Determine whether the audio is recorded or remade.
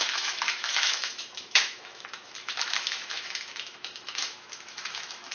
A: remade